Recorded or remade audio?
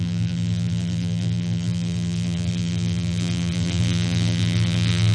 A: remade